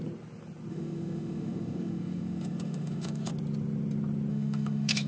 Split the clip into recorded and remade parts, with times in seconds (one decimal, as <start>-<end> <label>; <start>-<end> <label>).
0.0-0.7 recorded; 0.7-3.3 remade; 3.3-4.3 recorded; 4.3-5.1 remade